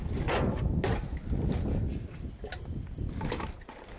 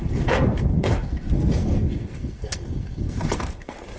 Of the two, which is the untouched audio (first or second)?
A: first